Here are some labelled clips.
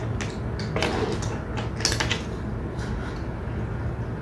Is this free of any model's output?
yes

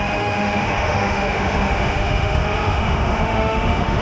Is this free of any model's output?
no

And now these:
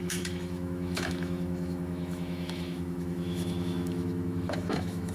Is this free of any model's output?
no